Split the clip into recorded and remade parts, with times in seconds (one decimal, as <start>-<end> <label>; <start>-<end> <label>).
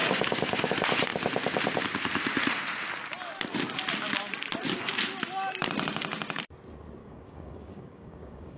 0.0-0.7 remade; 0.7-7.0 recorded; 7.0-8.6 remade